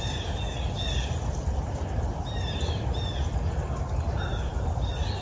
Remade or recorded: recorded